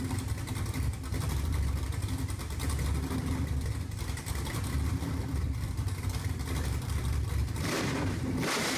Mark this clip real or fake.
fake